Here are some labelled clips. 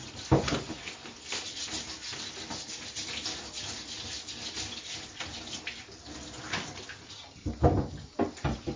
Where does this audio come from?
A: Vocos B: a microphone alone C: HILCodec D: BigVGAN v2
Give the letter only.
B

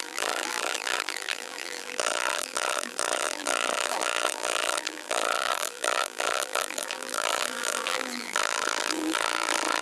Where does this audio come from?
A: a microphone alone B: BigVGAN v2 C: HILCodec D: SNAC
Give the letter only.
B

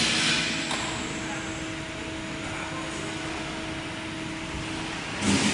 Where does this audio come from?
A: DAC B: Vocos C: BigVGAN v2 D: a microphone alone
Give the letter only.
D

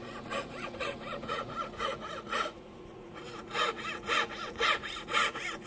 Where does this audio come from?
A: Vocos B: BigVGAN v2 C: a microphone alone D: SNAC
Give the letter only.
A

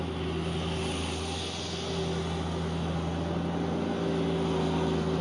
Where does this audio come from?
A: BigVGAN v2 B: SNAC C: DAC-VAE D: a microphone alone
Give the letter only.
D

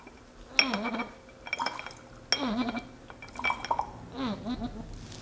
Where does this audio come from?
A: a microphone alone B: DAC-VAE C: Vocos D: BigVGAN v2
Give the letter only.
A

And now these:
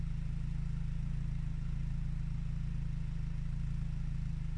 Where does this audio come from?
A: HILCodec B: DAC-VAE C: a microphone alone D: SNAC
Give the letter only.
C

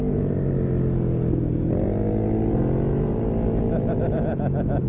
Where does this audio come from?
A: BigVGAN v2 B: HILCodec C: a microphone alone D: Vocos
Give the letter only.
C